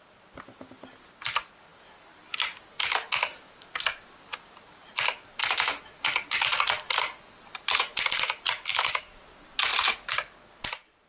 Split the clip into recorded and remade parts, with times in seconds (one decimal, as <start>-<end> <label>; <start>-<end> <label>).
0.0-8.7 recorded; 8.7-9.2 remade; 9.2-11.1 recorded